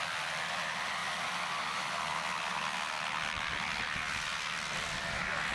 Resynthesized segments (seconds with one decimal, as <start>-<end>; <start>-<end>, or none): none